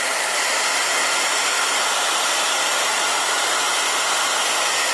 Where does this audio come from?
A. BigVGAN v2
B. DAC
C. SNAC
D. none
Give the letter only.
D